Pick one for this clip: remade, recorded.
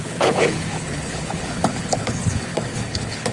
remade